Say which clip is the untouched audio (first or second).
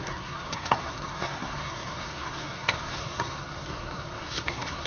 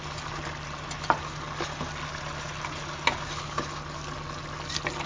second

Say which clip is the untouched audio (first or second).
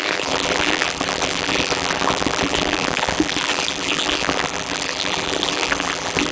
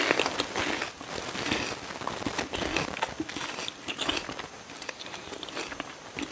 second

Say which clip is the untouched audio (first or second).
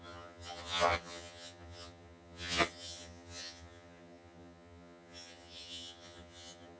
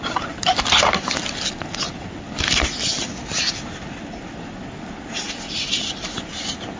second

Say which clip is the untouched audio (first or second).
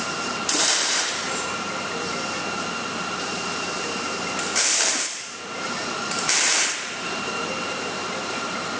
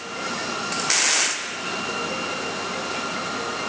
second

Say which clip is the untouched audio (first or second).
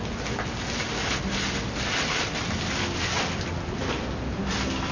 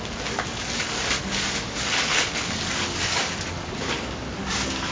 first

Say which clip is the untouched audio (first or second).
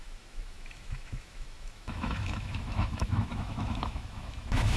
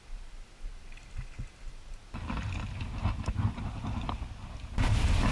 second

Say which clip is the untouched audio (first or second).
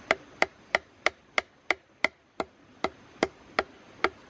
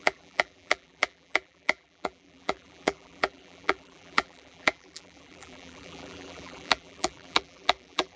first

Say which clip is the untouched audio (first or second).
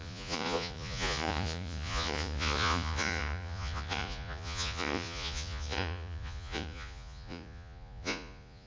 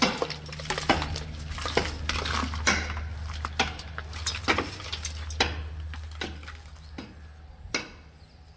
second